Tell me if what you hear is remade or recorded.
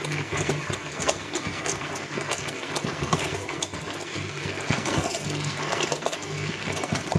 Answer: remade